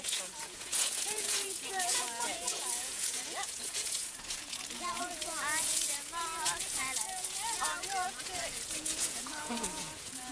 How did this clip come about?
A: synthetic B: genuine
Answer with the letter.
A